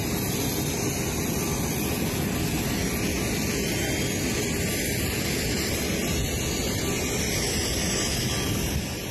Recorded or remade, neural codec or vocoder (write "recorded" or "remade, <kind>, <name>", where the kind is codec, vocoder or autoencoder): recorded